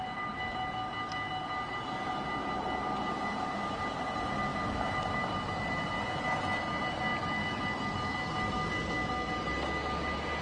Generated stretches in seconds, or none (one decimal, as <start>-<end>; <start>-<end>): none